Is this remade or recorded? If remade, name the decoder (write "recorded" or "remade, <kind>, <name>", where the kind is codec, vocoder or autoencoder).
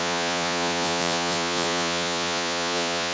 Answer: remade, vocoder, Vocos